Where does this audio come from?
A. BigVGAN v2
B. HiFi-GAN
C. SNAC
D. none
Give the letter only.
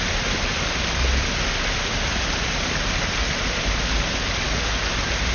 D